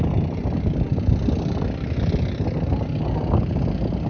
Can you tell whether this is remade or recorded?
recorded